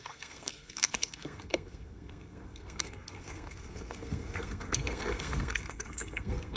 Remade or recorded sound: remade